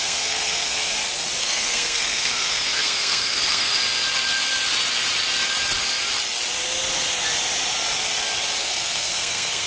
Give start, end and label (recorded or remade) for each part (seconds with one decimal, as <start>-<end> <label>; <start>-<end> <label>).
0.0-0.8 remade; 0.8-1.4 recorded; 1.4-3.8 remade; 3.8-8.6 recorded; 8.6-9.7 remade